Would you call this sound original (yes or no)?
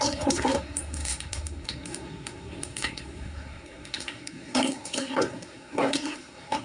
no